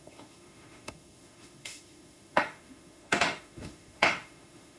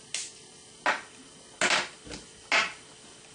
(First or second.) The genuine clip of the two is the second